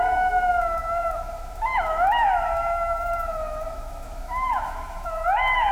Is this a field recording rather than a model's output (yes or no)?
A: no